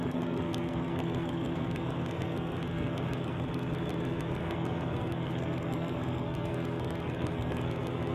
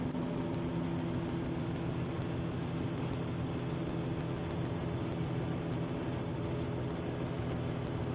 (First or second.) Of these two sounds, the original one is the second